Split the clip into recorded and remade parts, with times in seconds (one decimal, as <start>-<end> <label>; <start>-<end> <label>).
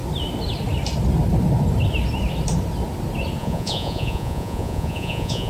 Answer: 0.0-3.4 recorded; 3.4-5.5 remade